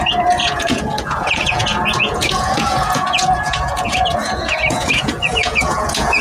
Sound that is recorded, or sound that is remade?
remade